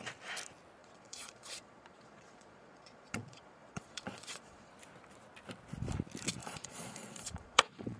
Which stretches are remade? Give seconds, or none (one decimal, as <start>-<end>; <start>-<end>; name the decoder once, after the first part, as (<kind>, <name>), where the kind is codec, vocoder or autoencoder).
0.8-4.7 (vocoder, Vocos); 6.4-8.0